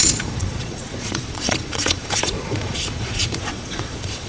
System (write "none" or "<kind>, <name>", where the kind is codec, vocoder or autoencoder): vocoder, Vocos